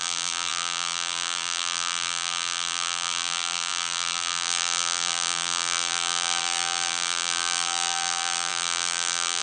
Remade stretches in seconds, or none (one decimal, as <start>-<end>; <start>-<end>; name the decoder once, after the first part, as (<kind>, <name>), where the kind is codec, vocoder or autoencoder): 0.0-9.4 (vocoder, BigVGAN v2)